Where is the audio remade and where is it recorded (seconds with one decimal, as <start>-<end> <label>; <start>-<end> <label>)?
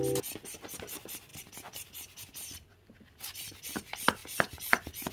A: 0.0-5.1 recorded